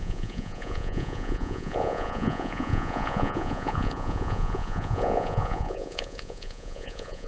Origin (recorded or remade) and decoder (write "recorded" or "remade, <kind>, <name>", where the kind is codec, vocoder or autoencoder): remade, vocoder, Vocos